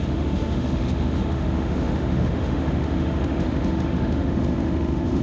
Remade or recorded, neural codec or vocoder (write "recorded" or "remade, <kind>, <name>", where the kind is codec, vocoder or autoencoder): remade, autoencoder, DAC-VAE